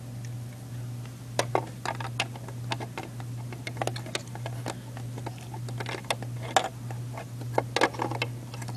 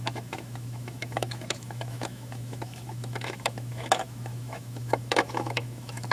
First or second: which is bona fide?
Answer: first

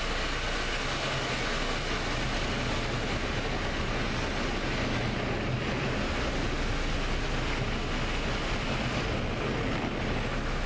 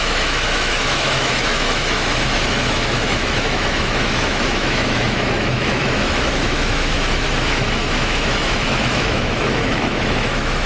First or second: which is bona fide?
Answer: first